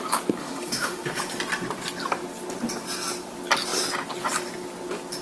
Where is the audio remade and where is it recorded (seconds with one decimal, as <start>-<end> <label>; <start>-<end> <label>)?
0.0-0.4 recorded; 0.4-1.2 remade; 1.2-5.2 recorded